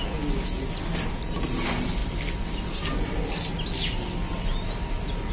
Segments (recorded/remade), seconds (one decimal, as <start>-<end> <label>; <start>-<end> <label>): 0.0-5.3 recorded